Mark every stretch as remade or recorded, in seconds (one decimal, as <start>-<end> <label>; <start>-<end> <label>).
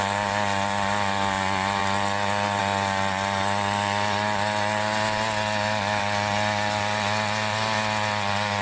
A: 0.0-8.6 recorded